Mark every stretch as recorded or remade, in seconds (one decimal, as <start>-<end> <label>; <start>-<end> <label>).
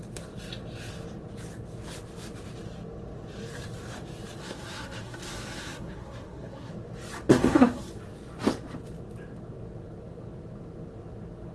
0.0-4.4 recorded; 4.4-6.7 remade; 6.7-7.3 recorded; 7.3-7.9 remade; 7.9-11.5 recorded